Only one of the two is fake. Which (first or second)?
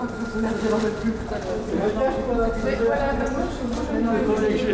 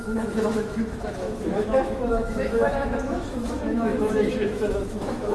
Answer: second